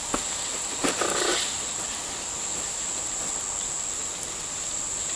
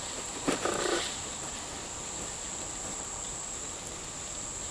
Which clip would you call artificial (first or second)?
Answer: second